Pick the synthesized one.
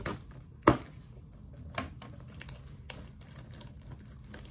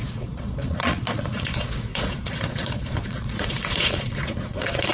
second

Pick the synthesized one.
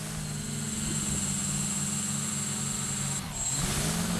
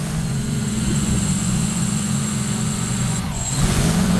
second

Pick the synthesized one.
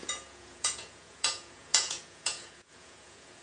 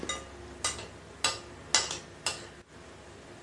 first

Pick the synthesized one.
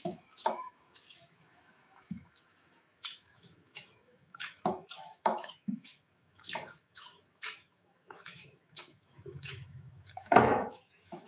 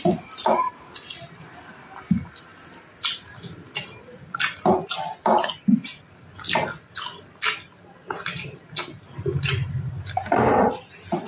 first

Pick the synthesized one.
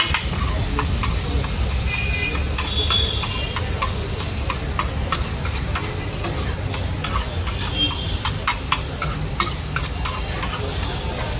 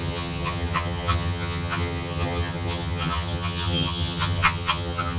second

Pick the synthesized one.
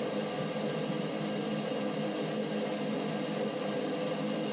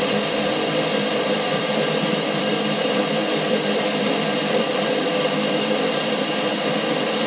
second